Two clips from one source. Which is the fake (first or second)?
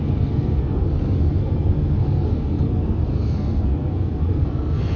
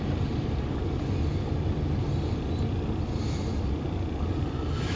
first